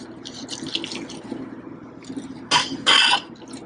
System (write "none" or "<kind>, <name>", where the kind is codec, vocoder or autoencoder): none